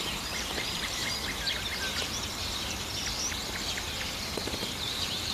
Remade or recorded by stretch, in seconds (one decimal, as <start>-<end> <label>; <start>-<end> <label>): 0.0-1.0 remade; 1.0-4.2 recorded; 4.2-5.3 remade